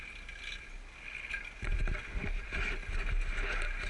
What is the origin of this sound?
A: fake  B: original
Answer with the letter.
B